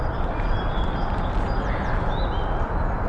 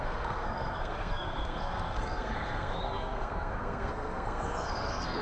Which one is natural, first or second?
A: first